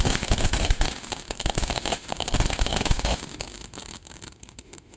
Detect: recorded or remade remade